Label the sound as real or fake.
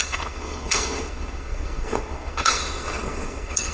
fake